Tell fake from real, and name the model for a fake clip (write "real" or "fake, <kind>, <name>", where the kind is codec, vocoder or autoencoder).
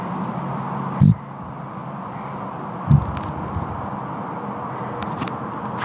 real